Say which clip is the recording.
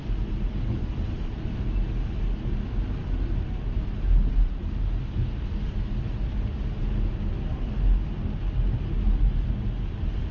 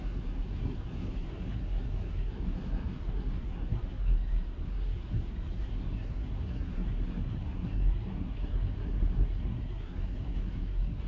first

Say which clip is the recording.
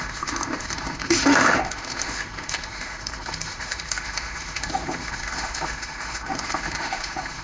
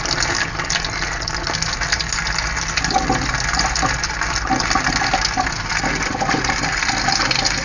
second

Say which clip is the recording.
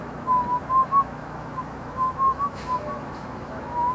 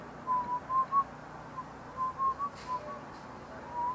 second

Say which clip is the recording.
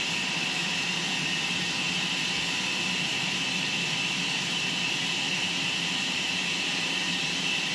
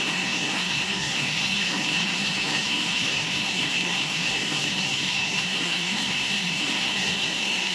first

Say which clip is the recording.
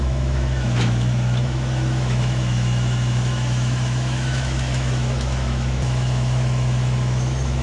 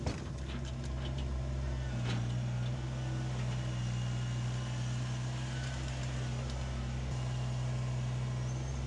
second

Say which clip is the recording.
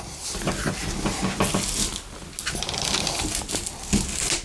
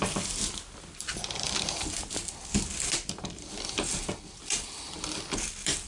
first